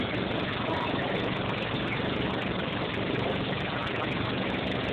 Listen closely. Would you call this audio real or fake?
real